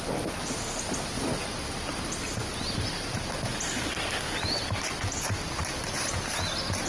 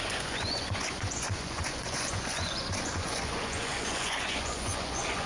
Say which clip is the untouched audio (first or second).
first